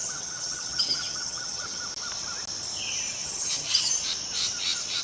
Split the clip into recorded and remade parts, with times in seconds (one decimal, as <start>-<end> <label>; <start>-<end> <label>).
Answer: 0.0-1.8 remade; 1.8-3.2 recorded; 3.2-3.9 remade; 3.9-5.0 recorded